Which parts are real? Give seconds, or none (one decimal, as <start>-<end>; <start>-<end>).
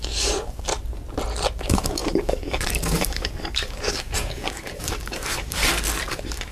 0.7-1.6; 5.6-6.1